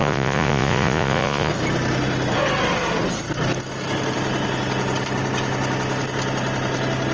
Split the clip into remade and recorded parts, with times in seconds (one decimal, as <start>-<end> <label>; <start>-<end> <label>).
0.0-1.5 remade; 1.5-7.1 recorded